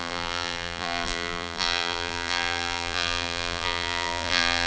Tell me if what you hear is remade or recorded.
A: remade